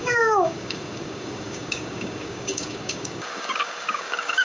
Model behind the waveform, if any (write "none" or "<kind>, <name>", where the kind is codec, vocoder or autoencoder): codec, DAC